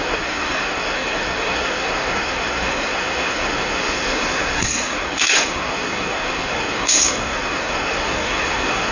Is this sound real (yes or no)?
no